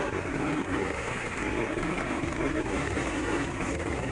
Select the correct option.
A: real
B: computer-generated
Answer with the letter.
B